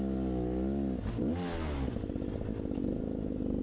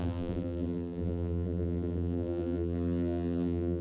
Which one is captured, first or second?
first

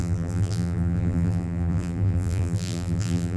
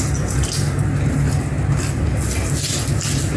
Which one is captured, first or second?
second